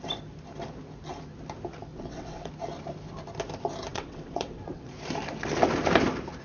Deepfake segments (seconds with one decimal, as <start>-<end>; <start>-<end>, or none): 1.9-2.5; 3.9-4.9